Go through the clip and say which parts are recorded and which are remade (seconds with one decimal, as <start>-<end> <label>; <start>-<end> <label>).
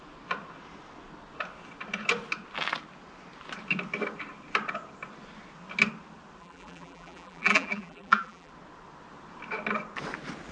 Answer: 0.0-6.4 recorded; 6.4-8.5 remade; 8.5-10.5 recorded